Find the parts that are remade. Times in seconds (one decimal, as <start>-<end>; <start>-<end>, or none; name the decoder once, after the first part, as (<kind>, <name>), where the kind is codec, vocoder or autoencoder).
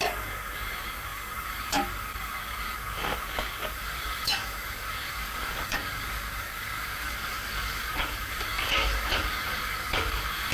0.0-10.5 (codec, DAC)